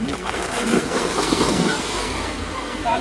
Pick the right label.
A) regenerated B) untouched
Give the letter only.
A